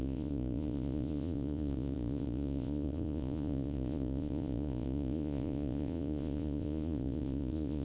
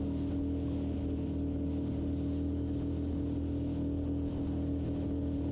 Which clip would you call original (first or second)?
second